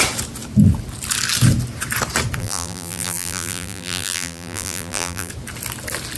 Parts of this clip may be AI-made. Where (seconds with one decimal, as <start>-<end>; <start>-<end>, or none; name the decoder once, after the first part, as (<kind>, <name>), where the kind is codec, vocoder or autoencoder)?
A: 2.4-5.3 (vocoder, BigVGAN v2)